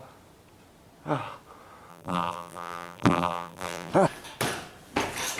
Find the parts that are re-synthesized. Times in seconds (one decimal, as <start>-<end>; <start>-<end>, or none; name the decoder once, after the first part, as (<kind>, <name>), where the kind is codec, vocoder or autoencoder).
1.9-3.9 (vocoder, BigVGAN v2)